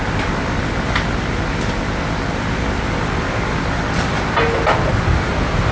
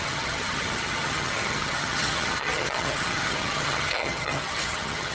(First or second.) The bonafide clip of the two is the first